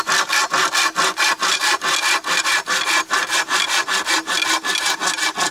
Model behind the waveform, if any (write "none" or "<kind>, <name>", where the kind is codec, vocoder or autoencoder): none